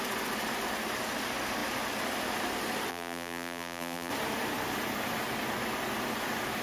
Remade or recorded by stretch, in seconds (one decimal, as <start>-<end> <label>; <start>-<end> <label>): 0.0-2.9 recorded; 2.9-4.1 remade; 4.1-6.6 recorded